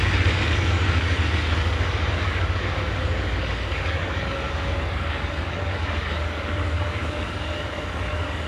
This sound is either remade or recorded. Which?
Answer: remade